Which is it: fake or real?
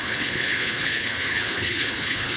fake